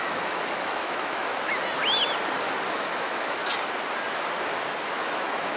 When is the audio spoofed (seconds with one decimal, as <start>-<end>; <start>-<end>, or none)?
0.0-1.3; 2.7-3.4; 4.8-5.6